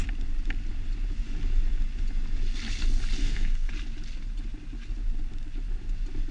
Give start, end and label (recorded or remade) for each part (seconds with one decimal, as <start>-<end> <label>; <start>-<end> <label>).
0.0-3.2 recorded; 3.2-3.7 remade; 3.7-6.3 recorded